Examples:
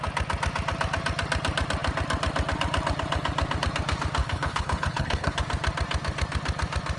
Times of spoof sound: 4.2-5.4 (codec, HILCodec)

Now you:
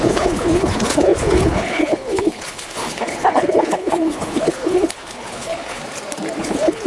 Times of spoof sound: 0.0-5.8 (codec, HILCodec); 6.4-6.9

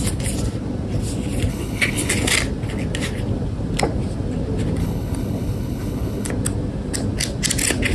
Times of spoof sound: 1.5-2.1 (codec, HILCodec); 4.8-6.3

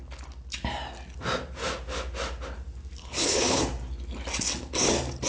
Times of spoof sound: 3.0-3.6 (codec, HILCodec)